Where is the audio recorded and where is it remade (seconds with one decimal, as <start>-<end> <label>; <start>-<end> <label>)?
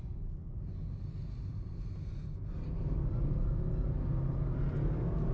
0.0-5.3 recorded